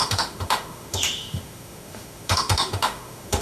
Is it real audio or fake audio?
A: fake